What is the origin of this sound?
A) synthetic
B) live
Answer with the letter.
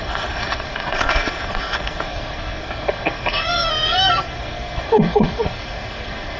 A